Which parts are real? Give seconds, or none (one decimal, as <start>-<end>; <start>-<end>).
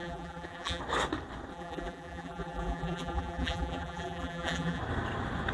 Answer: 0.8-1.5; 4.8-5.5